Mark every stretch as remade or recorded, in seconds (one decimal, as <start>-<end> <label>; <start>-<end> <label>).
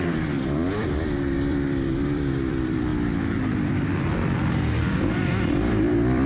0.0-6.3 remade